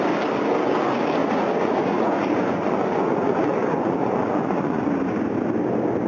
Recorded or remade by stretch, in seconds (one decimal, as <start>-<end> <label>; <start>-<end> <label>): 0.0-1.2 recorded; 1.2-4.9 remade; 4.9-6.1 recorded